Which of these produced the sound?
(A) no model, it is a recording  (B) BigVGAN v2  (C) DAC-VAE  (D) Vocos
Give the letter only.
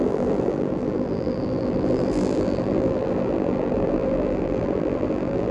B